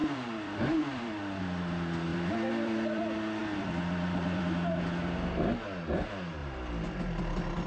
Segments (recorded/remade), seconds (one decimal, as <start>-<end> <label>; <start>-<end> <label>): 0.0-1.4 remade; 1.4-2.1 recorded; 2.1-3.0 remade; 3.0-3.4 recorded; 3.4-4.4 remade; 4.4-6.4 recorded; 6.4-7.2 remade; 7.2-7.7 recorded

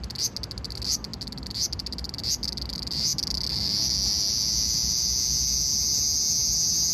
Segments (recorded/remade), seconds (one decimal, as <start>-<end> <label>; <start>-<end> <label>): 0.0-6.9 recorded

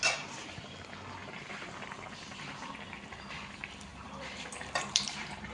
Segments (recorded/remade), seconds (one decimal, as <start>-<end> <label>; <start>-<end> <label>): 0.0-1.2 recorded; 1.2-2.8 remade; 2.8-3.9 recorded; 3.9-5.5 remade

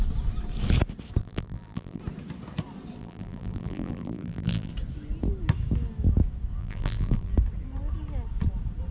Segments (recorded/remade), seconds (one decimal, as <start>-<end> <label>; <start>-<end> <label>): 0.0-1.2 recorded; 1.2-2.0 remade; 2.0-3.0 recorded; 3.0-4.7 remade; 4.7-6.6 recorded; 6.6-7.3 remade; 7.3-8.9 recorded